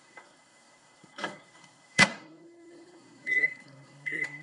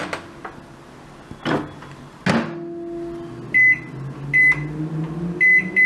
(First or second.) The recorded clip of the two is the second